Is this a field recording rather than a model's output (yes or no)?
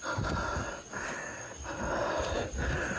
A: yes